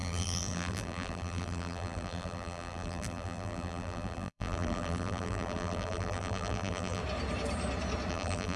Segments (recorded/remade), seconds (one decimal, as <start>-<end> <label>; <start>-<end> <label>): 0.0-7.0 remade; 7.0-8.1 recorded; 8.1-8.6 remade